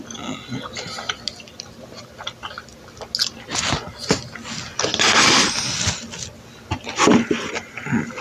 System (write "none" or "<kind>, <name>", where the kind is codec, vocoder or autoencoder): none